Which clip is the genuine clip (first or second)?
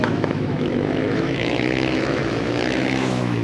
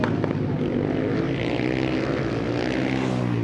second